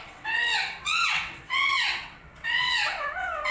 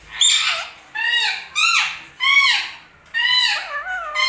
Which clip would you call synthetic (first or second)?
first